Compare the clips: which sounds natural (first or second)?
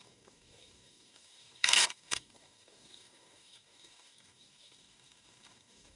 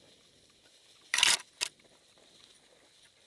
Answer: second